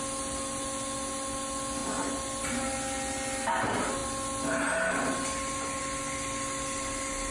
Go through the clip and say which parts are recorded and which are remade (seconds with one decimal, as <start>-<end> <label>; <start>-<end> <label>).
0.0-7.3 recorded